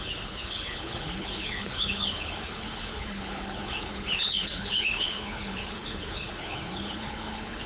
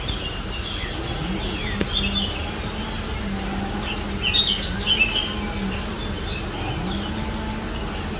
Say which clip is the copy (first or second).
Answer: first